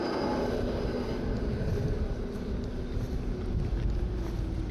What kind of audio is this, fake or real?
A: real